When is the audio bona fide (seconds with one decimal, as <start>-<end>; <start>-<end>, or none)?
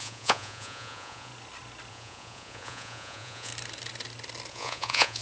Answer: 1.3-1.9; 3.5-4.5